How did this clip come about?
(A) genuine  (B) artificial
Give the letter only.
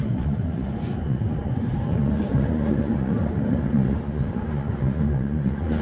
B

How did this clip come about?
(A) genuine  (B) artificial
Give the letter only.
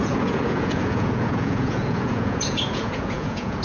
B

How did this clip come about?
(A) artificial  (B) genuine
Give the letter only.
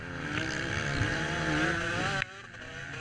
B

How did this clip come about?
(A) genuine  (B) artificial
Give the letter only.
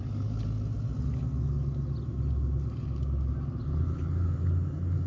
A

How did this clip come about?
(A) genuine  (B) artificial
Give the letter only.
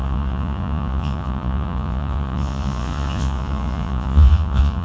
B